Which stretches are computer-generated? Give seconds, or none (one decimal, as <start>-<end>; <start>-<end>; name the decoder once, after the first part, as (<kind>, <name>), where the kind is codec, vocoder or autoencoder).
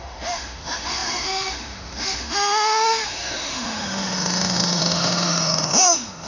0.0-6.3 (autoencoder, DAC-VAE)